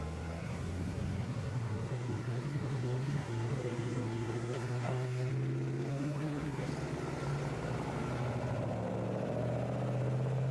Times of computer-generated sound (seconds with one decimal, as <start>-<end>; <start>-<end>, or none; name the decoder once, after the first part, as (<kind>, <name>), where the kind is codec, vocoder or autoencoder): 0.0-5.3 (codec, SNAC); 5.9-6.7